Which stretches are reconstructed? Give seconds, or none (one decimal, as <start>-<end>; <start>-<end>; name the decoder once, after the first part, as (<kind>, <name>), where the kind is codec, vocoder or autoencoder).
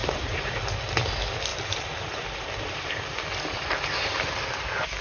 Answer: 0.0-0.6 (vocoder, BigVGAN v2); 1.5-3.2